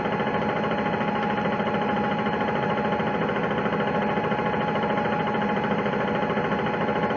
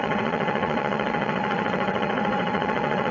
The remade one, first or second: second